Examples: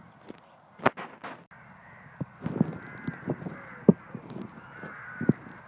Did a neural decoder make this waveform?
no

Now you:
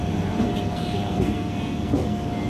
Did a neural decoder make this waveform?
yes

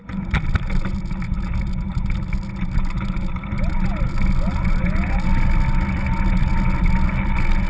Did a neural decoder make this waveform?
no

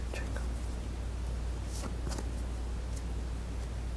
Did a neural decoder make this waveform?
no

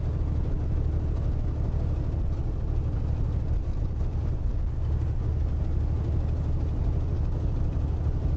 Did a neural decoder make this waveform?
no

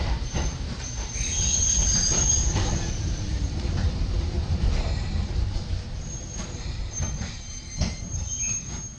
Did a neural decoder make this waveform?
yes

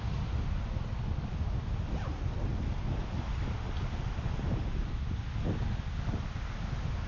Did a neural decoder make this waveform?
no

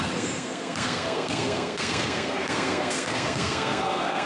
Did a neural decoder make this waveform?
yes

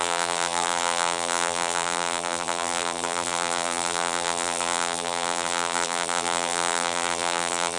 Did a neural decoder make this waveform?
yes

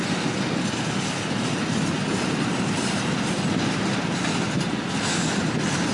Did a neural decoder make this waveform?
no